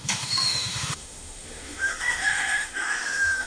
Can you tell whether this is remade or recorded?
remade